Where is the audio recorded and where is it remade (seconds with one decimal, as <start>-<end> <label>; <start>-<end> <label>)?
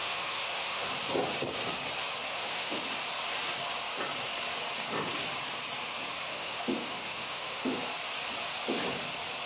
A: 0.0-0.9 remade; 0.9-2.3 recorded; 2.3-2.8 remade; 2.8-6.2 recorded; 6.2-7.8 remade; 7.8-9.5 recorded